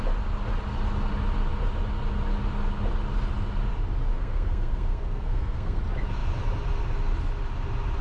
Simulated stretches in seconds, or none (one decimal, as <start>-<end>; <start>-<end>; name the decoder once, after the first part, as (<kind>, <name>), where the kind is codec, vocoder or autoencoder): 4.1-5.8 (codec, SNAC)